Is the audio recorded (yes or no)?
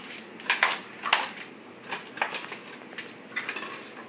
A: yes